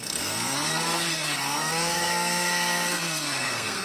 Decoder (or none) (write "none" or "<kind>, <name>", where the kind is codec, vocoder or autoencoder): codec, SNAC